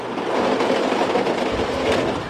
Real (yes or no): yes